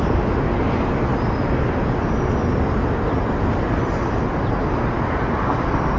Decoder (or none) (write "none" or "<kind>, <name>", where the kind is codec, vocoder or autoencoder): none